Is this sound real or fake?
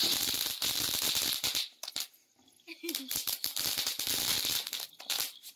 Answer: real